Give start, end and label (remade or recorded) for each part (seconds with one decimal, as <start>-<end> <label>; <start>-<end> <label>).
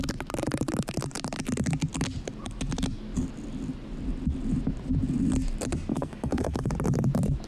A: 0.0-5.9 recorded; 5.9-6.7 remade; 6.7-7.5 recorded